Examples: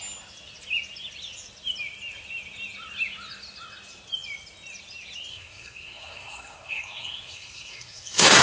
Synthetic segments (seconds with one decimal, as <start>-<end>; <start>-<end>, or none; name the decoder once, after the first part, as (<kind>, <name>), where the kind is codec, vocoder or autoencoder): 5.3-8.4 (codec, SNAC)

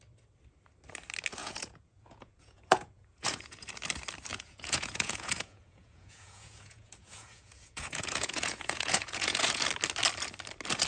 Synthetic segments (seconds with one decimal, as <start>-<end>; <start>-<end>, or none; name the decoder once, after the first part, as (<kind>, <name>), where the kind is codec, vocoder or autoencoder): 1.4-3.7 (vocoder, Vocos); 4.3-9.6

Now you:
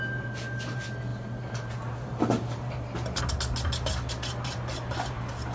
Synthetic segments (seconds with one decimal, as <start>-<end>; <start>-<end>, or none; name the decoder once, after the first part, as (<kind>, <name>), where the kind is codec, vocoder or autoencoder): 1.1-3.2 (vocoder, BigVGAN v2)

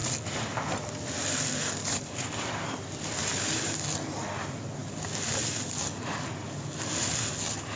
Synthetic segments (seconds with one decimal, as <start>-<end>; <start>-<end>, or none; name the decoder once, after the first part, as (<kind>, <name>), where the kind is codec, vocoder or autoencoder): none

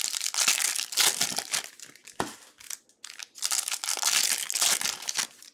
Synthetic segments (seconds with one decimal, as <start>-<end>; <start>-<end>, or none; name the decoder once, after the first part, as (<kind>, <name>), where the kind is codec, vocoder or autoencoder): none

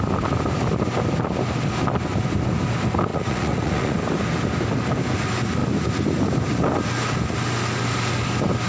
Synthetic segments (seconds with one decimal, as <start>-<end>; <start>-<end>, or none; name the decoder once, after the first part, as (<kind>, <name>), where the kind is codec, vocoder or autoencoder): 3.1-4.0 (vocoder, Vocos)

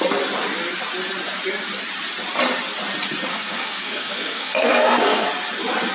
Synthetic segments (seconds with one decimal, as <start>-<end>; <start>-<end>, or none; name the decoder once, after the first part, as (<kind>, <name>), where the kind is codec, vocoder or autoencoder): 3.3-5.3 (codec, SNAC)